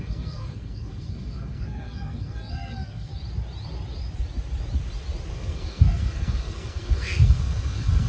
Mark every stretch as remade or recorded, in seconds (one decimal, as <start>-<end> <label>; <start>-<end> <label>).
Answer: 0.0-3.1 remade; 3.1-5.3 recorded; 5.3-8.1 remade